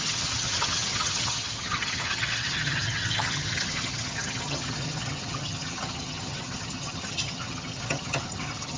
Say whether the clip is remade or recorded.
remade